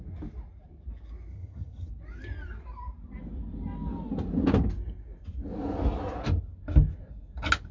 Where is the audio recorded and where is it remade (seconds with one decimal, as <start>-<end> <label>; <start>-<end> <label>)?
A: 0.0-1.3 recorded; 1.3-1.9 remade; 1.9-7.7 recorded